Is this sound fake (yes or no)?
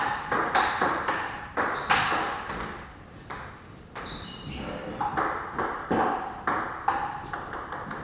no